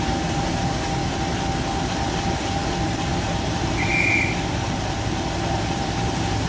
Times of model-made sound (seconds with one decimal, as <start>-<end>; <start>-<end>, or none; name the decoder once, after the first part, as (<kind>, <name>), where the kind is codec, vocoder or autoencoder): 0.0-1.0 (vocoder, BigVGAN v2); 1.9-6.5